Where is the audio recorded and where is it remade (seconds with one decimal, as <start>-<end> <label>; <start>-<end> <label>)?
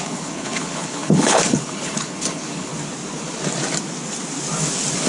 0.0-2.7 remade; 2.7-5.1 recorded